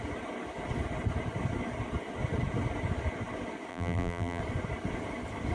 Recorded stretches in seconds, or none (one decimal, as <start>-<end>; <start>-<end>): 0.0-3.7; 4.4-5.5